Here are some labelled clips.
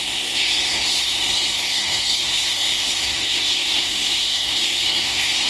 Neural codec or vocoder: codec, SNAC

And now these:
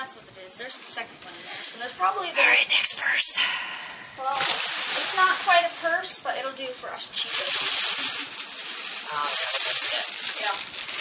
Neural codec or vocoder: none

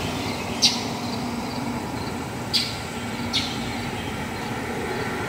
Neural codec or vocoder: none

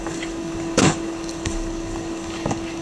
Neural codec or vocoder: codec, DAC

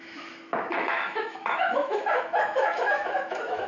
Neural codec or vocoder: autoencoder, DAC-VAE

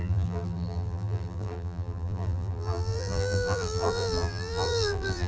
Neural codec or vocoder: vocoder, BigVGAN v2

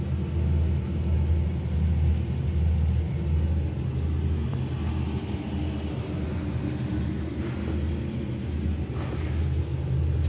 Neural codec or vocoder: none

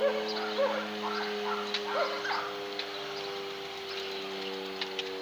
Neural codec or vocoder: none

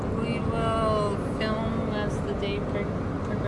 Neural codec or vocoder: none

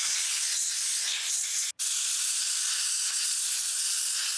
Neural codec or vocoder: none